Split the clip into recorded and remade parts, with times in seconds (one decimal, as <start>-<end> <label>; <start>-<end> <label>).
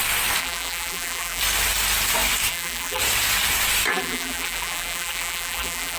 0.0-0.4 recorded; 0.4-1.4 remade; 1.4-2.5 recorded; 2.5-3.0 remade; 3.0-3.9 recorded; 3.9-6.0 remade